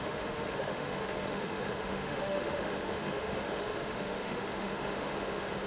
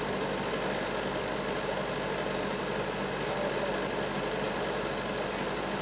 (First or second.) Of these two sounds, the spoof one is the first